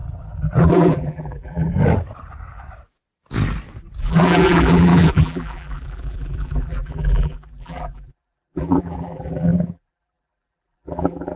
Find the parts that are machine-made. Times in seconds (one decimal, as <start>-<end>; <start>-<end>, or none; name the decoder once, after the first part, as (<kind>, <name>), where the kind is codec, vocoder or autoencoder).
0.6-1.7 (vocoder, BigVGAN v2); 4.0-11.4